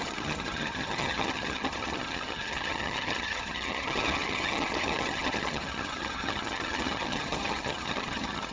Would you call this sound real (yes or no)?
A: no